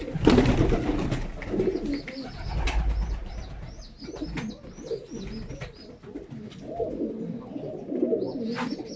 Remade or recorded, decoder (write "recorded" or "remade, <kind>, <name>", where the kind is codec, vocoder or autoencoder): recorded